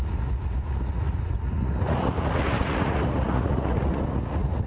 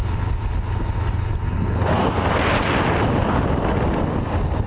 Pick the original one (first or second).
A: second